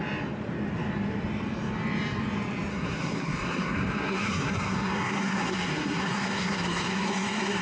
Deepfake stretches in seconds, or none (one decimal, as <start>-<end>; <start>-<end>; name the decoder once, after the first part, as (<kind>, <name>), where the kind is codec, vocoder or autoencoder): 2.7-7.6 (codec, SNAC)